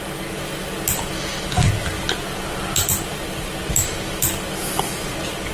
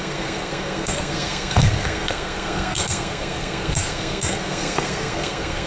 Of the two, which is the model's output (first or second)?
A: second